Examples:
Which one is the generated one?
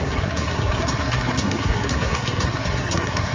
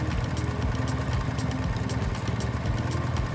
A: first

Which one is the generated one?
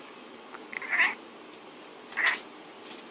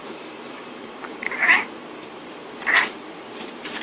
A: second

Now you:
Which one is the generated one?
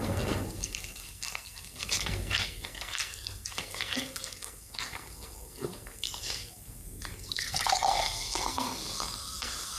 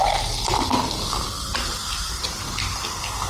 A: first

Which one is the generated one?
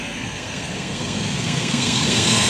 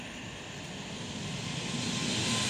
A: first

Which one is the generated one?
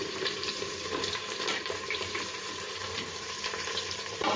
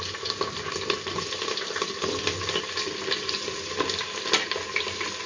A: first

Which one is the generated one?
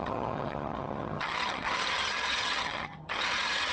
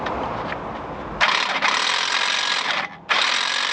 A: first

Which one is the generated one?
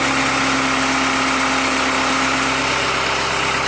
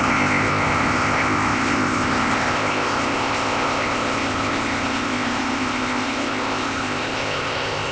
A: second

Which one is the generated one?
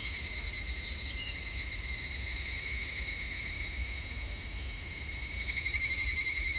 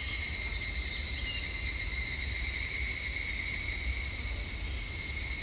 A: first